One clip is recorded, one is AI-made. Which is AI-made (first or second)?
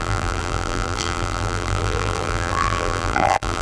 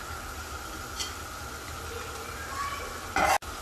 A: first